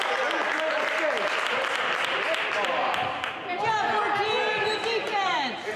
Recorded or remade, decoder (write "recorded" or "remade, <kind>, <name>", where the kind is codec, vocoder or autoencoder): recorded